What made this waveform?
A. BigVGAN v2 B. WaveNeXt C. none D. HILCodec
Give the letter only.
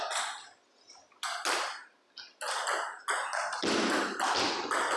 C